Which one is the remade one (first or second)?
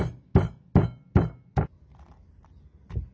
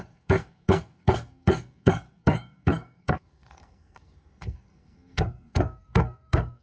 second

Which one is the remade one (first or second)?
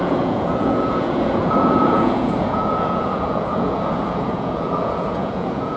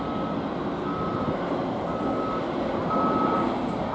first